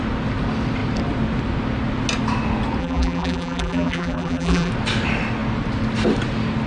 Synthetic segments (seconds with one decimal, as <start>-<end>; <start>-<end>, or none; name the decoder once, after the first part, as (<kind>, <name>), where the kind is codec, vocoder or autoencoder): 2.8-4.7 (vocoder, BigVGAN v2)